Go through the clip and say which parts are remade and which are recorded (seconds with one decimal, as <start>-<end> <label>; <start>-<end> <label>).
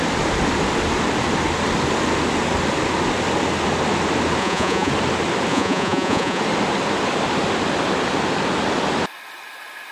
0.0-4.4 recorded; 4.4-4.9 remade; 4.9-5.5 recorded; 5.5-6.4 remade; 6.4-9.9 recorded